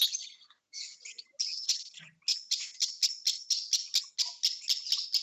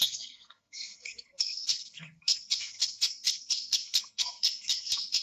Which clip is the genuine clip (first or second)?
first